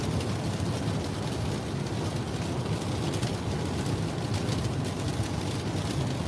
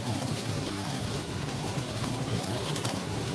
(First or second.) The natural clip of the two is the first